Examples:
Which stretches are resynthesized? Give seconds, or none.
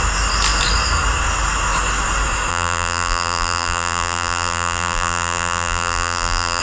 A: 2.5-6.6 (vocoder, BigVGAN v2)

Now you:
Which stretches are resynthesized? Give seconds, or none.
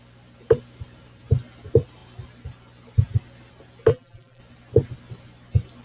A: 3.9-4.4 (vocoder, BigVGAN v2)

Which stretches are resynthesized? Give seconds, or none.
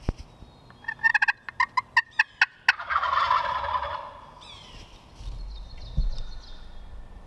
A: none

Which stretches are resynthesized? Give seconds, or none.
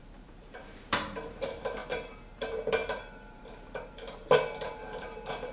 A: 0.0-1.8 (vocoder, BigVGAN v2); 2.3-5.5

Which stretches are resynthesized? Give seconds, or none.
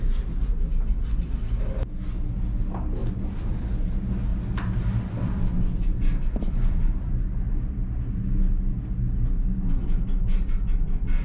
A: 3.0-3.6 (vocoder, BigVGAN v2); 4.3-7.8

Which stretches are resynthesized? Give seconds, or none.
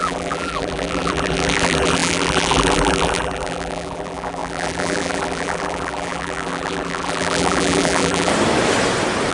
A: 0.0-8.3 (vocoder, BigVGAN v2)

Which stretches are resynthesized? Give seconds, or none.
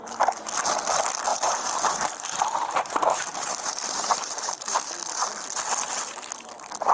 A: 1.3-4.9 (vocoder, BigVGAN v2)